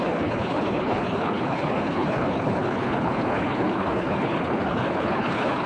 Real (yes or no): no